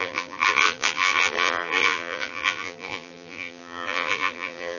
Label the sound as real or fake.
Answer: fake